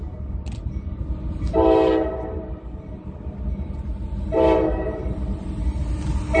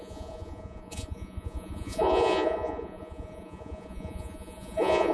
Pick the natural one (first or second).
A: first